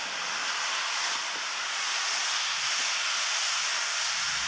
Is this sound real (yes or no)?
yes